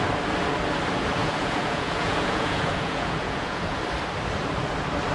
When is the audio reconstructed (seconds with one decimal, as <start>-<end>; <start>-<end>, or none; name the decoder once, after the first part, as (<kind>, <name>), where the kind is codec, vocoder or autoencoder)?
1.2-3.8 (vocoder, Vocos)